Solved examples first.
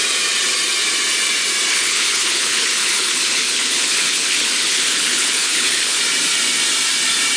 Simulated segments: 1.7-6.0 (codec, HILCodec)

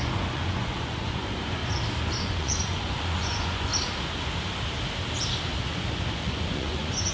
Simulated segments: 0.0-1.6 (vocoder, Vocos); 2.2-3.7; 5.9-7.1

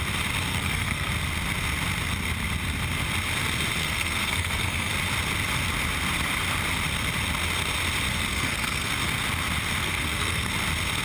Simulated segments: 0.5-1.1 (codec, SNAC); 3.8-4.9; 8.3-8.9; 9.8-10.5

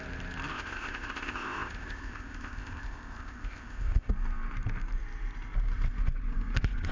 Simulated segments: 0.5-4.1 (codec, ZipCodec)

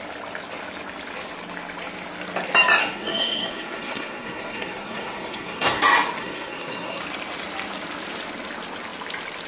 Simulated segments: 2.8-5.8 (codec, SNAC); 6.2-7.0

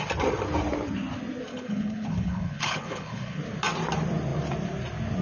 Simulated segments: 1.5-3.4 (codec, HILCodec)

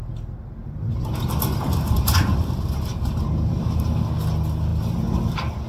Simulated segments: 0.6-4.0 (vocoder, BigVGAN v2)

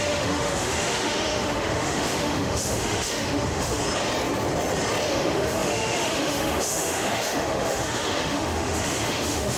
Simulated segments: 0.0-3.8 (autoencoder, DAC-VAE); 5.1-9.6